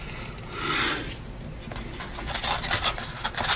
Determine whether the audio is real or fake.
real